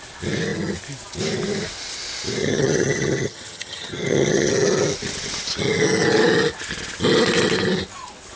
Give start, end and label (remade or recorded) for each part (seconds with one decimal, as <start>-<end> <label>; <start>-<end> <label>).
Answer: 0.0-2.4 recorded; 2.4-4.5 remade; 4.5-8.4 recorded